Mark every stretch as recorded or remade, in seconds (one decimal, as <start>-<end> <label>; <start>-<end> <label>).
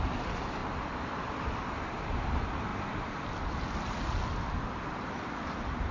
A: 0.0-5.9 recorded